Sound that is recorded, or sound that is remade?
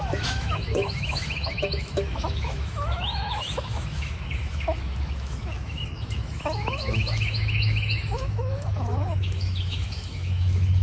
remade